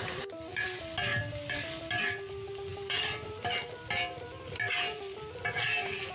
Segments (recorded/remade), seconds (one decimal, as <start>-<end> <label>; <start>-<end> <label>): 0.0-6.1 recorded